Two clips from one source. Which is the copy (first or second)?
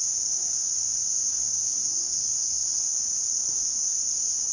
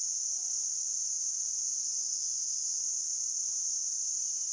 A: first